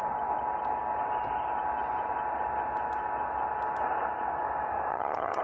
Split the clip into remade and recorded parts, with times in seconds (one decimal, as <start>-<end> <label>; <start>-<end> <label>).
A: 0.0-4.9 recorded; 4.9-5.4 remade